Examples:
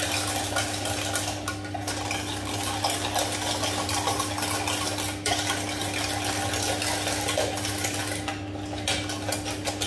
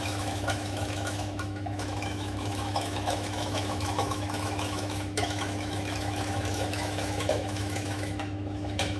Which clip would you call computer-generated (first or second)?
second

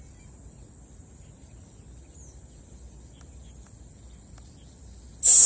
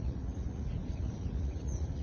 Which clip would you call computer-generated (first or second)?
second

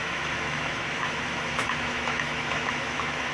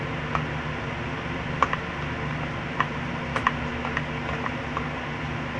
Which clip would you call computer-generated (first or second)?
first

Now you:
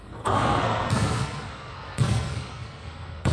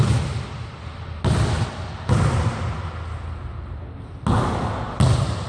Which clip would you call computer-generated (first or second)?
first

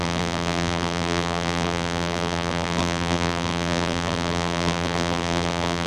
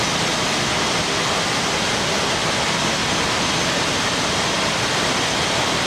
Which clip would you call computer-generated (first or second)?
first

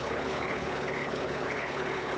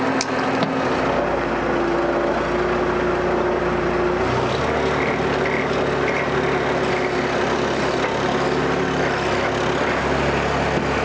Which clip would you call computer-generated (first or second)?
first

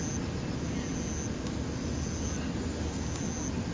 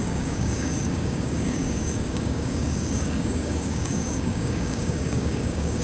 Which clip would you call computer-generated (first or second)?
second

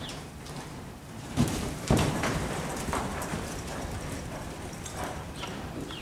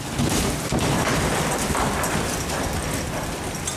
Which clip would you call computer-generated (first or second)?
first